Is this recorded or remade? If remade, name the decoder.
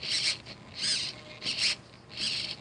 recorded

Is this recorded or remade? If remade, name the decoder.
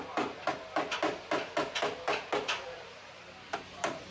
recorded